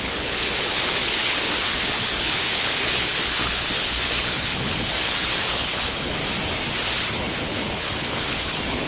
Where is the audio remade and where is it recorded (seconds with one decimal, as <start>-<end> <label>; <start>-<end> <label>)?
0.0-6.2 remade; 6.2-7.1 recorded; 7.1-8.9 remade